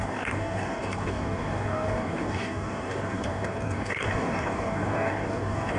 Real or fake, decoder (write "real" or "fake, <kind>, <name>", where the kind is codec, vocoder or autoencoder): fake, codec, DAC